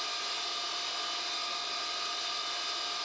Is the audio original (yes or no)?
yes